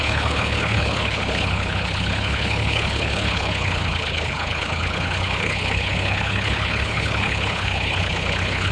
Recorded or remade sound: remade